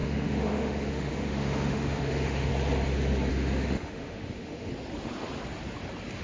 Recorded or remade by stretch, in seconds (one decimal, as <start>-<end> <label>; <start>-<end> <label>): 0.0-2.5 remade; 2.5-3.3 recorded; 3.3-4.7 remade; 4.7-6.2 recorded